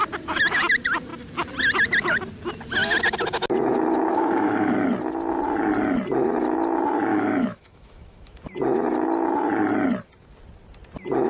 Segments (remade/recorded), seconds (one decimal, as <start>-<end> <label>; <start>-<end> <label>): 0.0-4.1 recorded; 4.1-4.7 remade; 4.7-7.1 recorded; 7.1-8.4 remade; 8.4-11.3 recorded